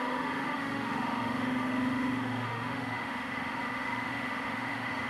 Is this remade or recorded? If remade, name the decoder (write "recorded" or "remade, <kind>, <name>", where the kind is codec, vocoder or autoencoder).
remade, autoencoder, DAC-VAE